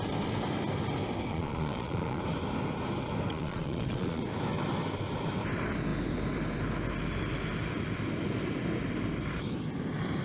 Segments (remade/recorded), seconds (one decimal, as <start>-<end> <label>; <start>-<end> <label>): 0.0-1.3 recorded; 1.3-2.2 remade; 2.2-3.3 recorded; 3.3-4.2 remade; 4.2-10.2 recorded